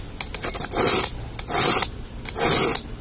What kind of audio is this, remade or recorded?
recorded